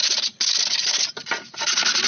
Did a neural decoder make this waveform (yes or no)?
no